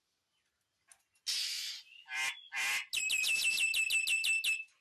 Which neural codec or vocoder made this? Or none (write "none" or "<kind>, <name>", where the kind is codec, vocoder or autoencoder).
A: none